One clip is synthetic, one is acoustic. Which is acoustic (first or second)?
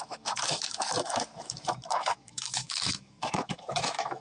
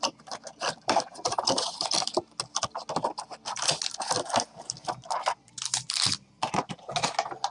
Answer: second